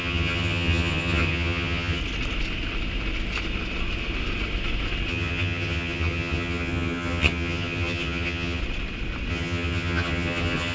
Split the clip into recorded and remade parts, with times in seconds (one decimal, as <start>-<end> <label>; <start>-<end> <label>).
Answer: 0.0-2.0 remade; 2.0-5.1 recorded; 5.1-8.6 remade; 8.6-9.3 recorded; 9.3-10.7 remade